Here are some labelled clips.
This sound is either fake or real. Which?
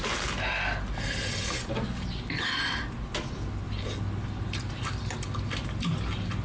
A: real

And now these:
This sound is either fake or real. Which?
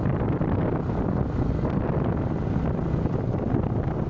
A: real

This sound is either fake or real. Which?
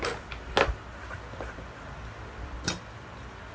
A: real